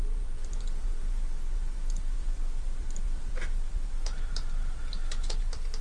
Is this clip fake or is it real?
fake